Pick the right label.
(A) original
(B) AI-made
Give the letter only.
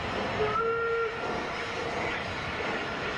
A